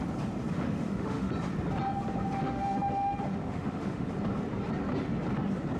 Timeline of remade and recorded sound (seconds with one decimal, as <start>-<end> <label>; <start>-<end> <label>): 0.0-0.5 recorded; 0.5-1.3 remade; 1.3-2.4 recorded; 2.4-4.1 remade; 4.1-5.8 recorded